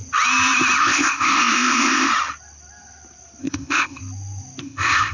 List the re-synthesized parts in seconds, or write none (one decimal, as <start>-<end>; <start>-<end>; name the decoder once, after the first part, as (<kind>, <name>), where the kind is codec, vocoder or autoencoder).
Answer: 0.8-2.1 (codec, ZipCodec); 3.4-4.0; 4.6-5.1